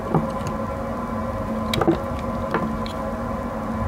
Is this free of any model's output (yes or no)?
yes